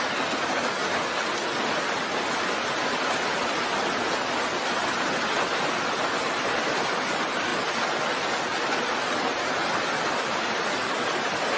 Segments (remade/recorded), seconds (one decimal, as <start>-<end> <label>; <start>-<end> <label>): 0.0-11.6 recorded